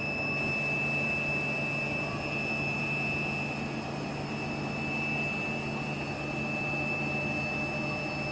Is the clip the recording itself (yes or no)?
yes